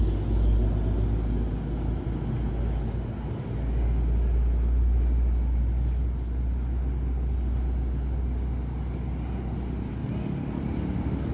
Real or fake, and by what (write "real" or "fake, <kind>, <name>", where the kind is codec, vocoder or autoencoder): real